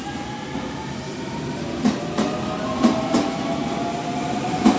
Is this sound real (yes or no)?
yes